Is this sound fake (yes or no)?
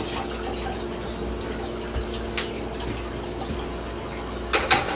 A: no